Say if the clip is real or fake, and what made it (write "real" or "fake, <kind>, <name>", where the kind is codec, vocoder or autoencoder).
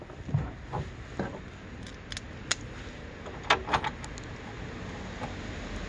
real